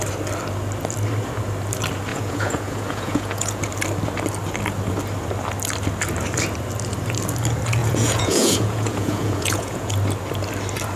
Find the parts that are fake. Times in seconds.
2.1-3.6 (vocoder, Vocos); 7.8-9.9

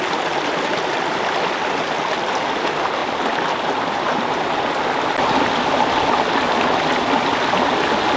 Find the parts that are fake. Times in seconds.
none

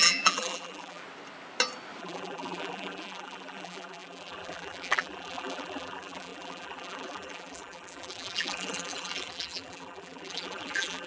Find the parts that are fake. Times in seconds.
0.0-1.0 (vocoder, BigVGAN v2); 2.0-11.1

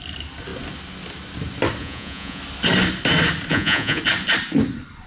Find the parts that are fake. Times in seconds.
1.8-2.4 (vocoder, Vocos); 3.5-4.0

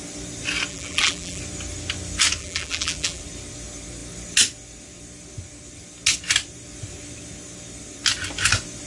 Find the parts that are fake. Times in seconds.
0.7-1.4 (vocoder, BigVGAN v2); 2.4-3.2

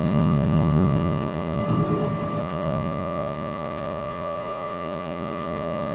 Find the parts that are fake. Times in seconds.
0.0-1.6 (vocoder, Vocos); 2.4-5.9

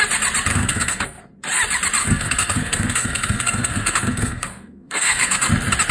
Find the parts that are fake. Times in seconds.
0.5-1.2 (codec, SNAC); 2.0-5.5

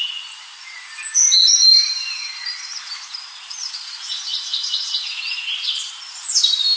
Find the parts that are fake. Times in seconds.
none